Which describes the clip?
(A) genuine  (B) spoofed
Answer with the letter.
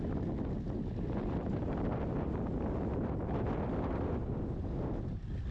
A